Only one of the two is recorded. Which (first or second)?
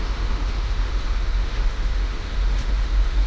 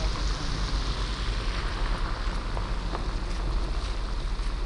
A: second